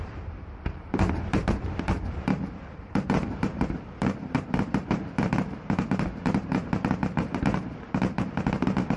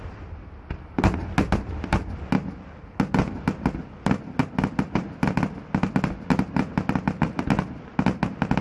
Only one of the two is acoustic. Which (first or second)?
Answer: second